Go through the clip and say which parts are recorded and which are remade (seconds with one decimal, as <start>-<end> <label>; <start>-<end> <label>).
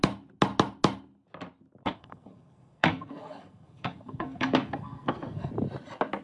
0.0-1.8 recorded; 1.8-5.5 remade; 5.5-6.2 recorded